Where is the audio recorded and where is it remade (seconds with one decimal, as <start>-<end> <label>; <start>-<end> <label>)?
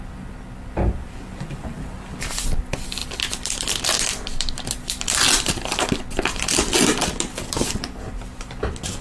0.0-9.0 remade